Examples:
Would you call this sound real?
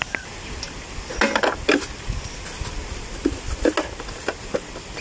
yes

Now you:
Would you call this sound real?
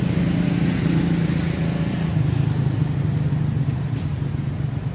yes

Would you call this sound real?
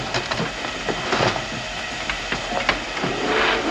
yes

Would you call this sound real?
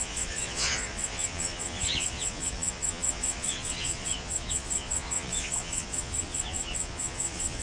no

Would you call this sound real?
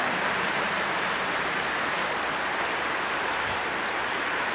yes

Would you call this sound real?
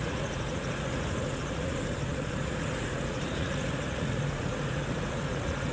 no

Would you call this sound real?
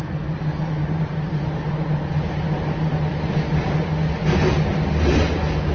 yes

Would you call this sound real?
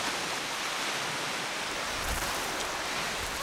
yes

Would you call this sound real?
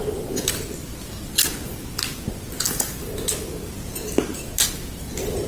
yes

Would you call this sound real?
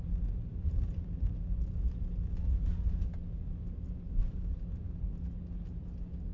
yes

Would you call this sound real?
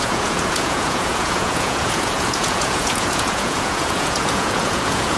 no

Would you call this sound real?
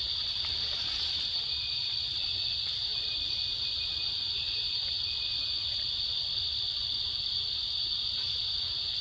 yes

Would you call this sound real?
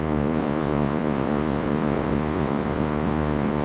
no